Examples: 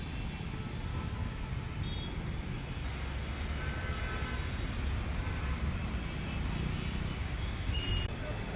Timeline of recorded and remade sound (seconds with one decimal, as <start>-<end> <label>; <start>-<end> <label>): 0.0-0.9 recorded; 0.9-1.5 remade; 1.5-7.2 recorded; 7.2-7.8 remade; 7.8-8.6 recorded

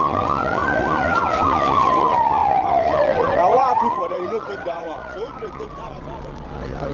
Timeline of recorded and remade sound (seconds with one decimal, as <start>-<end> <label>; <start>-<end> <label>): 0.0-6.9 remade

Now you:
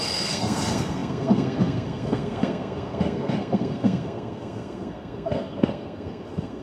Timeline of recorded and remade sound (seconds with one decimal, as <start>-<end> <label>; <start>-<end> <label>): 0.0-6.6 remade